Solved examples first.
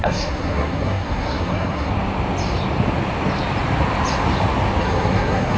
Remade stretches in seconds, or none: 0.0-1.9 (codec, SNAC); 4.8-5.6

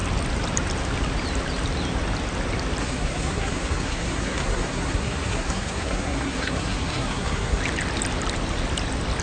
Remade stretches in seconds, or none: 2.8-7.6 (codec, SNAC)

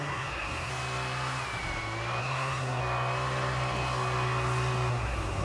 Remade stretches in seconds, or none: 0.0-0.7 (codec, SNAC); 2.2-2.8; 4.9-5.4

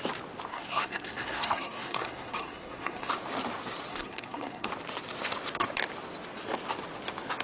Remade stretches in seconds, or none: 0.5-3.1 (codec, SNAC); 3.9-4.7

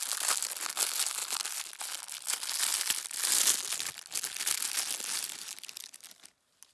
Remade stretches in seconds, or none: none

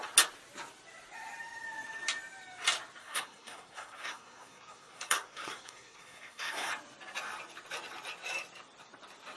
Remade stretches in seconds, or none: 3.0-6.7 (codec, SNAC)

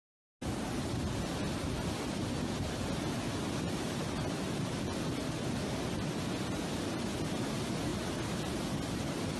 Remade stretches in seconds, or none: none

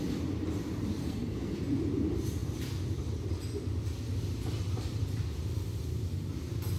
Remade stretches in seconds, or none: 1.0-1.6 (codec, SNAC)